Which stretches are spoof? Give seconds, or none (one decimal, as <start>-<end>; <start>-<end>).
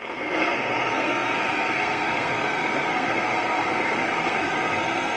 0.0-5.2